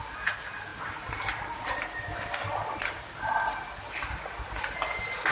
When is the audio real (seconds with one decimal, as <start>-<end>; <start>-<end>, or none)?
0.0-5.3